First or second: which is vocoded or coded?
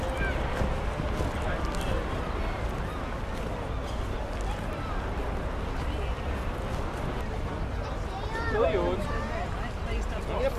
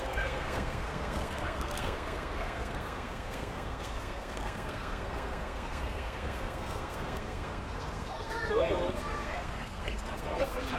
second